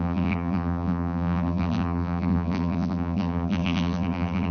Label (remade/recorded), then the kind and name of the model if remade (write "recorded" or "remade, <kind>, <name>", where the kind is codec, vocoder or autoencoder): remade, vocoder, BigVGAN v2